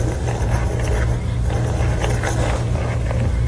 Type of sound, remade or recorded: recorded